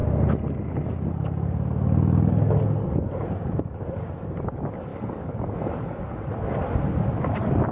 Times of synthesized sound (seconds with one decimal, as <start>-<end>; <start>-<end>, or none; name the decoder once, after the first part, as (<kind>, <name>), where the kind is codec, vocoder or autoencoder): 4.9-6.3 (codec, DAC)